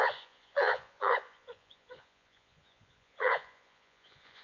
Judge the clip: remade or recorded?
remade